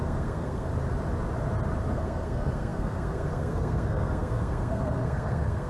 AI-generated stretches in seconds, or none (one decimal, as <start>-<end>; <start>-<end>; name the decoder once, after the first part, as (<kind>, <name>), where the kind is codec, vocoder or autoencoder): 0.0-0.7 (codec, SNAC); 1.9-5.7

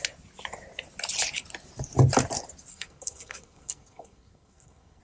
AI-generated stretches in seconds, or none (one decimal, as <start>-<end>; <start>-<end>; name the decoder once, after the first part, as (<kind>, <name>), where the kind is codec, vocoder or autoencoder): 2.7-5.0 (codec, SNAC)

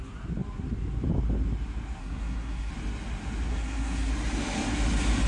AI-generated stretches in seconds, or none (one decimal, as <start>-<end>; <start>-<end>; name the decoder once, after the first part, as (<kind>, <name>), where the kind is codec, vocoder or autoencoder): 2.0-2.7 (codec, SNAC); 3.5-4.1

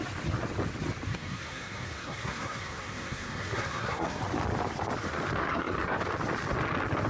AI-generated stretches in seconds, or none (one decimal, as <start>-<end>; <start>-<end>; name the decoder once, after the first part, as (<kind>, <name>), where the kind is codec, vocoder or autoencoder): 1.1-4.2 (codec, SNAC); 5.4-6.0

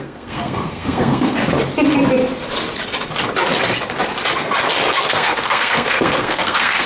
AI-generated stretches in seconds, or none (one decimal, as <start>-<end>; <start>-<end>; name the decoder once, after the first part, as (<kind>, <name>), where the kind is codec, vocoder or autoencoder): 0.0-1.4 (codec, SNAC); 5.1-6.9

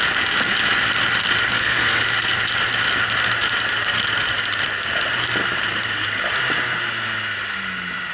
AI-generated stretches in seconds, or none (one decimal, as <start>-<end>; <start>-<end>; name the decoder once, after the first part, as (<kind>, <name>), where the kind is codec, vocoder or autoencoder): 1.5-2.0 (codec, SNAC)

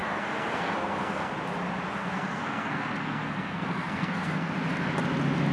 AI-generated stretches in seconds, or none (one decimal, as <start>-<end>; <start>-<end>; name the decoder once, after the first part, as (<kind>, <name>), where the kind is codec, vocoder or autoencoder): 0.0-1.3 (codec, SNAC); 2.0-4.5